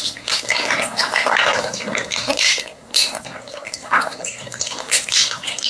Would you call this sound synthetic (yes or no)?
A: yes